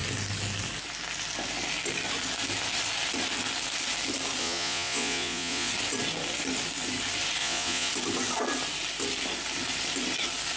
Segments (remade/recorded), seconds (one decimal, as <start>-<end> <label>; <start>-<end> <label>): 0.0-4.4 recorded; 4.4-5.7 remade; 5.7-7.4 recorded; 7.4-7.9 remade; 7.9-10.6 recorded